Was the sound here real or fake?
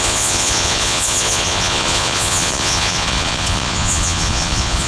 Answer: fake